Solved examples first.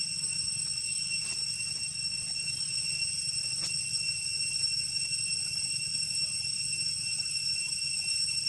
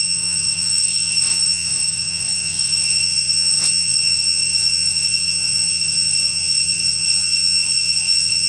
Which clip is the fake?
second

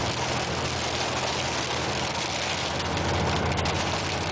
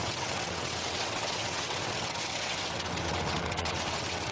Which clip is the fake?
second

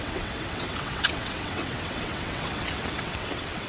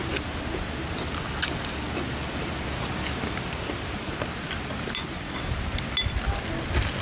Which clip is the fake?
first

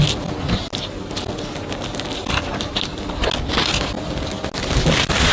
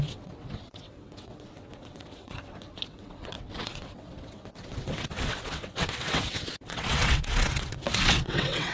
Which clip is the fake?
second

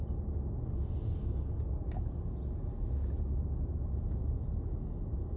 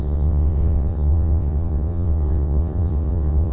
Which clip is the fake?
second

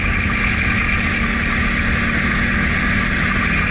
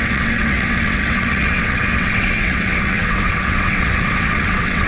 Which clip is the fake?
second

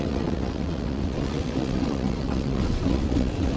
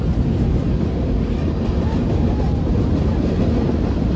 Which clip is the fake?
first